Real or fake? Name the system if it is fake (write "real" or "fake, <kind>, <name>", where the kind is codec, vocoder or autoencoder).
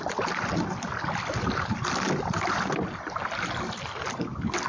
real